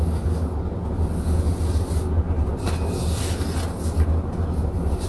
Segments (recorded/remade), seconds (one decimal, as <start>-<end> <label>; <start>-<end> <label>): 0.0-5.1 recorded

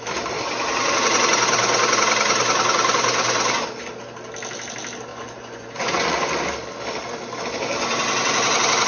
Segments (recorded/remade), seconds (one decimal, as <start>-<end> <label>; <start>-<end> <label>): 0.0-5.1 recorded; 5.1-6.4 remade; 6.4-8.9 recorded

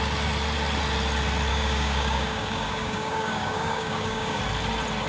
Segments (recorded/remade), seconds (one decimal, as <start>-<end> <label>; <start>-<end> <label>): 0.0-1.5 recorded; 1.5-4.4 remade; 4.4-5.1 recorded

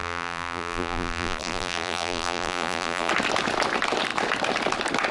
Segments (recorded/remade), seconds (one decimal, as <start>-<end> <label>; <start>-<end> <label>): 0.0-3.1 remade; 3.1-5.1 recorded

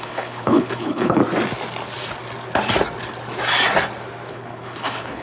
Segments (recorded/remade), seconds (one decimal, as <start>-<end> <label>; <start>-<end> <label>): 0.0-1.2 remade; 1.2-4.3 recorded; 4.3-5.2 remade

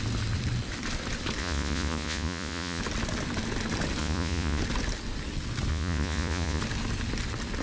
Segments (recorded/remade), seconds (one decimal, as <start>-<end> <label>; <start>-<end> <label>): 0.0-1.4 recorded; 1.4-2.8 remade; 2.8-4.0 recorded; 4.0-4.6 remade; 4.6-5.7 recorded; 5.7-6.6 remade; 6.6-7.6 recorded